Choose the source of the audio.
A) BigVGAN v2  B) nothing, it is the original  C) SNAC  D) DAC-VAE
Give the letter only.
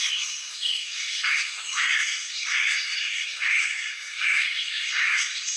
C